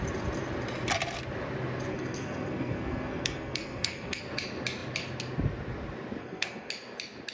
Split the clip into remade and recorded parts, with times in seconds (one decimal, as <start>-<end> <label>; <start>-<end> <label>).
0.0-1.9 recorded; 1.9-4.2 remade; 4.2-6.2 recorded; 6.2-6.7 remade; 6.7-7.3 recorded